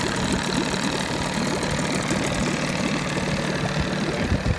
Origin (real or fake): real